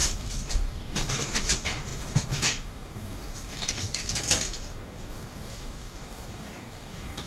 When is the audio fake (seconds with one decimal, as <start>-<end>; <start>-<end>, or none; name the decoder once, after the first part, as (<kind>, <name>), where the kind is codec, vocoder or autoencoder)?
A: 0.0-7.3 (codec, DAC)